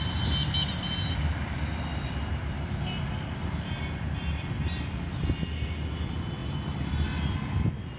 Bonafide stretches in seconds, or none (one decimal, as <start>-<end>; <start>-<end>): 0.0-8.0